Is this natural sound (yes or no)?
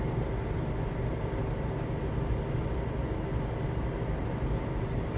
yes